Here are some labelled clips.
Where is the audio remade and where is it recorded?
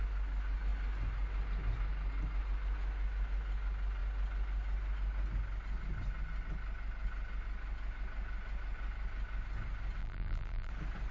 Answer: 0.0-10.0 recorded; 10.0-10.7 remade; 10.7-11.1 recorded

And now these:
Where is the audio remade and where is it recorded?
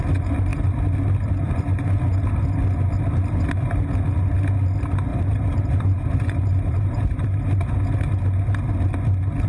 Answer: 0.0-5.1 recorded; 5.1-7.6 remade; 7.6-9.5 recorded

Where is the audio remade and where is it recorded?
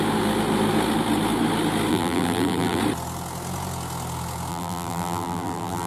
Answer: 0.0-1.9 recorded; 1.9-2.8 remade; 2.8-4.5 recorded; 4.5-5.9 remade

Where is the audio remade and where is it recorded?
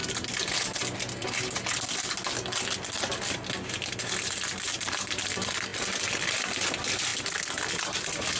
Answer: 0.0-4.6 recorded; 4.6-5.7 remade; 5.7-6.4 recorded; 6.4-7.1 remade; 7.1-7.7 recorded; 7.7-8.4 remade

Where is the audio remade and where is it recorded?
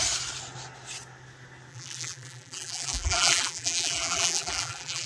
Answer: 0.0-1.7 recorded; 1.7-5.1 remade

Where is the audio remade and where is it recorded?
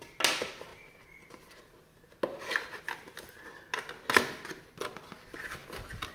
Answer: 0.0-6.1 recorded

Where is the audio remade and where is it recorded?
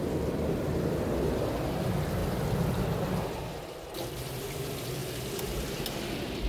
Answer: 0.0-6.5 remade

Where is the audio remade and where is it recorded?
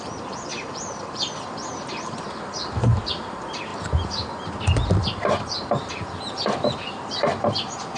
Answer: 0.0-3.7 remade; 3.7-6.9 recorded; 6.9-8.0 remade